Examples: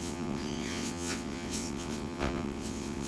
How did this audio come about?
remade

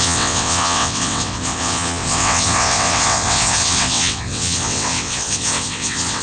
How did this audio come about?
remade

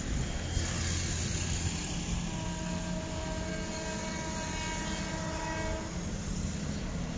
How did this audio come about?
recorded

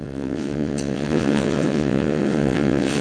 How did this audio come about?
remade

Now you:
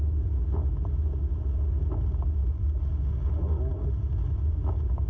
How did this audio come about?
recorded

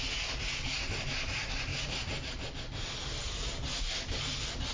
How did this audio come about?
recorded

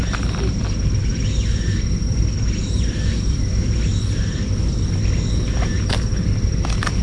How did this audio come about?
recorded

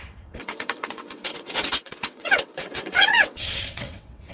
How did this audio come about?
remade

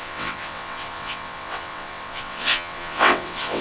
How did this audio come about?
remade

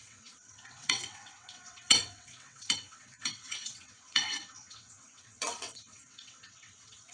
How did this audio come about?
remade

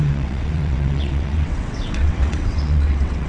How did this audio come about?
remade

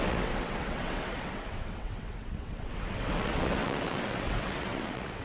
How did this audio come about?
remade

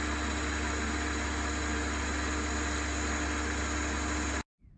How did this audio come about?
recorded